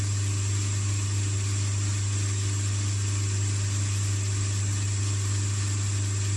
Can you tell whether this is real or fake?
real